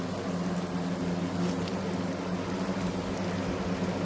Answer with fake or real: real